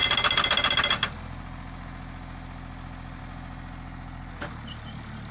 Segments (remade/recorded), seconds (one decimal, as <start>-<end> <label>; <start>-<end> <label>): 0.0-5.3 recorded